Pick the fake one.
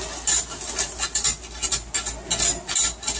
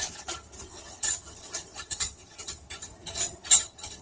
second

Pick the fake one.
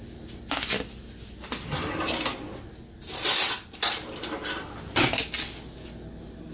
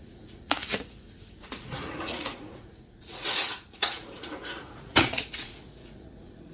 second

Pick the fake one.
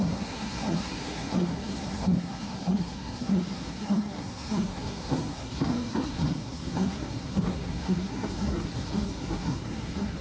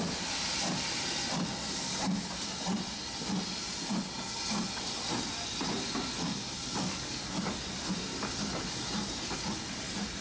first